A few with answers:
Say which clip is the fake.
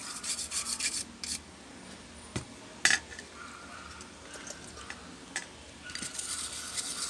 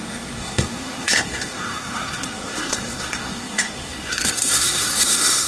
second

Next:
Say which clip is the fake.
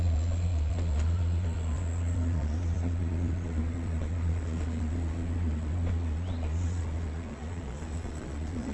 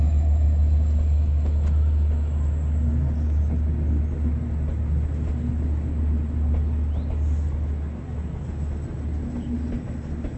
first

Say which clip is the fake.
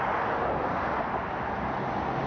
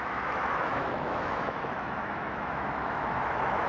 second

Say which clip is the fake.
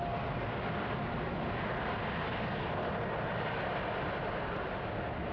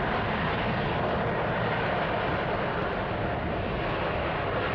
second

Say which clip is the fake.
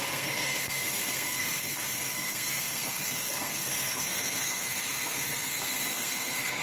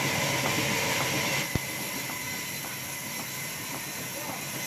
first